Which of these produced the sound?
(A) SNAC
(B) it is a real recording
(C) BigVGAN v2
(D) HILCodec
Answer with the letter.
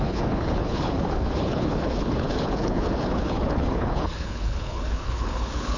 D